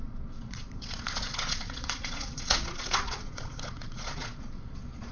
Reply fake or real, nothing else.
fake